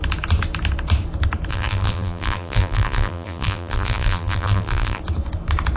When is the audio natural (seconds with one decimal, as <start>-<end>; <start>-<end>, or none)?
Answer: 0.0-1.5; 5.0-5.8

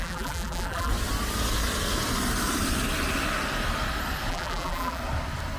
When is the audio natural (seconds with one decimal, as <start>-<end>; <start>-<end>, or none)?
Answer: 0.9-4.3; 5.0-5.6